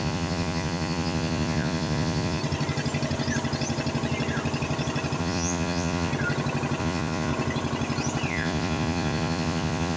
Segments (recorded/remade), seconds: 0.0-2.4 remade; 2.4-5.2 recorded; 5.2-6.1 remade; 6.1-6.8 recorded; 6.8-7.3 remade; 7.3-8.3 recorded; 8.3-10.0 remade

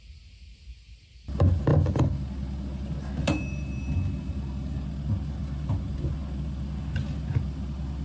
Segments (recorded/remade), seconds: 0.0-8.0 recorded